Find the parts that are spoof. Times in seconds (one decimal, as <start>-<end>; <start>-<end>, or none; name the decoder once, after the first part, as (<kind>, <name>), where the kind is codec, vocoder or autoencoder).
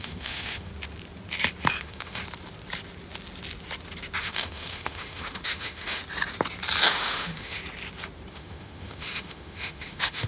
0.0-0.7 (autoencoder, DAC-VAE); 1.8-2.2; 4.2-6.0; 6.9-7.6; 8.3-10.3